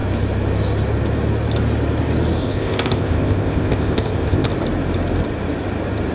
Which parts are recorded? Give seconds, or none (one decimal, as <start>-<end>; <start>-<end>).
0.0-2.4; 4.5-6.1